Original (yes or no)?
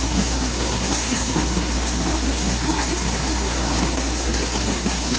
no